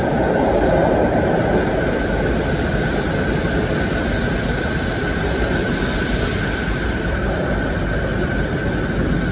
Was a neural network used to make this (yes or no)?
no